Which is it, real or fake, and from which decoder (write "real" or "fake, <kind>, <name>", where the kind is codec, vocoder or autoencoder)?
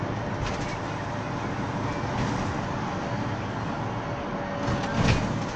real